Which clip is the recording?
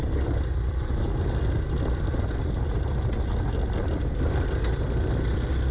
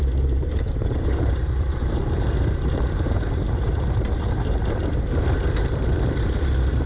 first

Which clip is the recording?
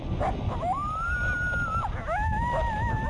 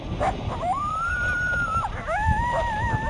first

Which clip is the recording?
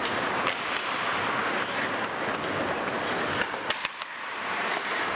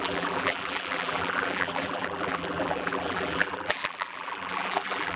first